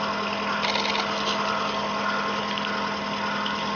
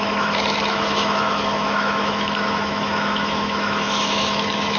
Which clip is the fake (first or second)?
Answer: second